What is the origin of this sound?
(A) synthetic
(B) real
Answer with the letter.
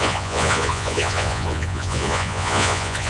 A